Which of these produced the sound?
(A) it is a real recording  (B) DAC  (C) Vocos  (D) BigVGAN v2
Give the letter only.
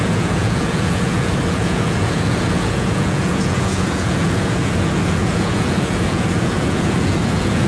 C